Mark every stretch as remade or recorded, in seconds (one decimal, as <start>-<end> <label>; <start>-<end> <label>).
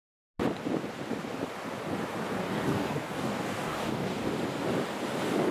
0.0-2.4 recorded; 2.4-4.3 remade; 4.3-5.5 recorded